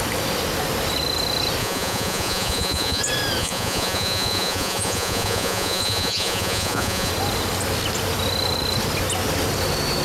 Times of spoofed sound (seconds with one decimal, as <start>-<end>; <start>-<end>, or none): 1.6-3.0; 3.4-7.1